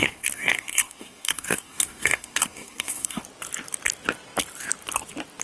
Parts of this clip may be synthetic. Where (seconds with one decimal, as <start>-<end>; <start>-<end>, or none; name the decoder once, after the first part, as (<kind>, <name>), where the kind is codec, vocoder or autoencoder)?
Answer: 0.0-3.2 (codec, SNAC)